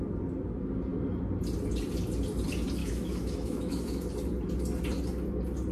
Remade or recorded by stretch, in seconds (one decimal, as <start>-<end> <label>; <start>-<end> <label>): 0.0-2.8 recorded; 2.8-4.1 remade; 4.1-5.7 recorded